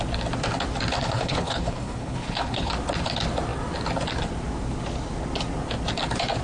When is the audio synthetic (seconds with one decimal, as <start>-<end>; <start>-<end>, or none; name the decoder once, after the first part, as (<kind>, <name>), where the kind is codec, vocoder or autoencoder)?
1.0-2.7 (codec, HILCodec)